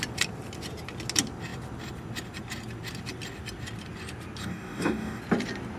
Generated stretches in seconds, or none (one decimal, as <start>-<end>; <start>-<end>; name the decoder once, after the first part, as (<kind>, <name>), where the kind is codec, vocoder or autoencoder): 4.4-5.2 (codec, DAC)

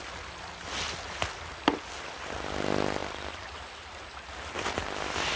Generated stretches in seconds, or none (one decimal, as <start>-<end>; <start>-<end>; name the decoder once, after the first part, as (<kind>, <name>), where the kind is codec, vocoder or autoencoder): none

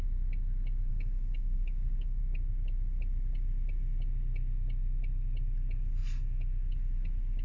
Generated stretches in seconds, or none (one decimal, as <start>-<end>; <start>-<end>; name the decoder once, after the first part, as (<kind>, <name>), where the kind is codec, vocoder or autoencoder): 0.9-2.2 (codec, DAC)

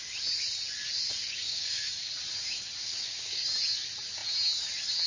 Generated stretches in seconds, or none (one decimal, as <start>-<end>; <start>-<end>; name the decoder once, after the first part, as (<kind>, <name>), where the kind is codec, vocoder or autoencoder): 1.2-1.9 (codec, DAC); 2.8-3.5

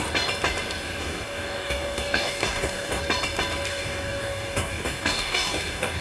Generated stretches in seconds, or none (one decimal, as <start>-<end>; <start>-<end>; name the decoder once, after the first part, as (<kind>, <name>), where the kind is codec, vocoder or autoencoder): 1.0-3.0 (codec, DAC); 3.7-6.0